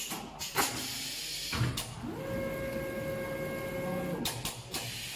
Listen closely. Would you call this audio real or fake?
real